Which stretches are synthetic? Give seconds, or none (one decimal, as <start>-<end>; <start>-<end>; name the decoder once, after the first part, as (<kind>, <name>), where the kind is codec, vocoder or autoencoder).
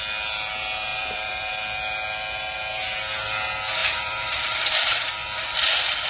0.9-1.5 (vocoder, BigVGAN v2); 3.8-4.4